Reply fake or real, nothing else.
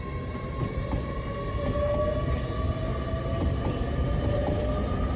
real